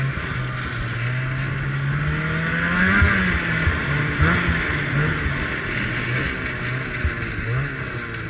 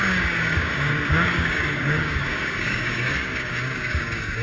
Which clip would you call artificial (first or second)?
second